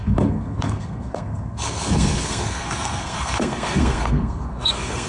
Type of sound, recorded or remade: remade